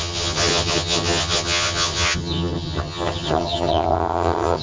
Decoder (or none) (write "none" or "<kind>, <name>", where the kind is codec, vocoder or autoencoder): vocoder, HiFi-GAN